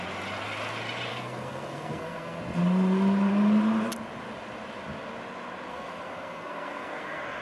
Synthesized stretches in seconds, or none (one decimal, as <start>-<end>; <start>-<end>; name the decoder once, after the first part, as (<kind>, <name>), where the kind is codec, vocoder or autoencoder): 1.1-2.4 (codec, SNAC); 5.7-7.4